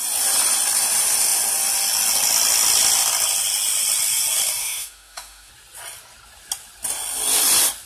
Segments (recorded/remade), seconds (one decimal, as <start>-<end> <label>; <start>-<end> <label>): 0.0-4.6 recorded; 4.6-5.5 remade; 5.5-7.9 recorded